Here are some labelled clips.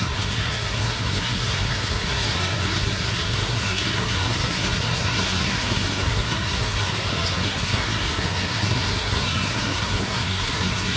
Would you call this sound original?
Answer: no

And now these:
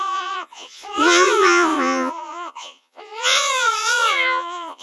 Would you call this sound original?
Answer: no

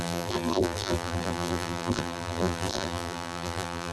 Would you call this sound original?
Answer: no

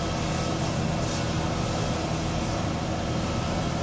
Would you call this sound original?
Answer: yes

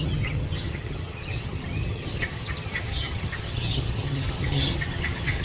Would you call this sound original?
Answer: no